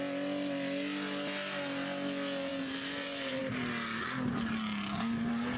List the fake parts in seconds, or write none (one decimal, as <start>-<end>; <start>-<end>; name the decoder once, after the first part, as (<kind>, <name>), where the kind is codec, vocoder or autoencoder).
2.5-3.4 (vocoder, BigVGAN v2)